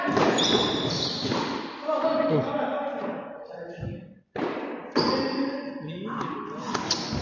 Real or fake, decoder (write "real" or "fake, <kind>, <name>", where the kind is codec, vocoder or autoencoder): real